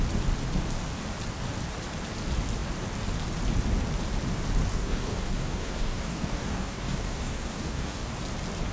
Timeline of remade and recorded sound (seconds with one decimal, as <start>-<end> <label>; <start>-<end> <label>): 0.0-4.7 recorded; 4.7-8.1 remade; 8.1-8.7 recorded